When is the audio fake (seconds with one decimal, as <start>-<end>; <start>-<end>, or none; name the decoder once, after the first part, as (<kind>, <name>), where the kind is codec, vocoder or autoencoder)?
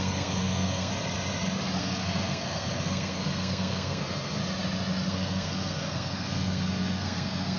0.0-0.9 (codec, SNAC); 1.8-4.4; 5.1-7.6